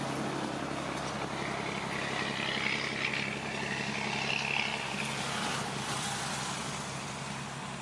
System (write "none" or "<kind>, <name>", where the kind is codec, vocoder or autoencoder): none